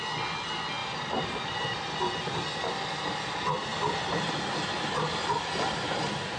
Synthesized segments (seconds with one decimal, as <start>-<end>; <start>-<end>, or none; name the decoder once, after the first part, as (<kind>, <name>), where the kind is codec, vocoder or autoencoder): 0.8-1.8 (vocoder, BigVGAN v2)